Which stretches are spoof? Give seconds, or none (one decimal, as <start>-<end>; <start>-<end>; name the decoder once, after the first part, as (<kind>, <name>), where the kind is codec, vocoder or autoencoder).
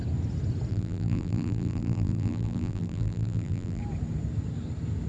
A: 0.7-3.8 (vocoder, BigVGAN v2)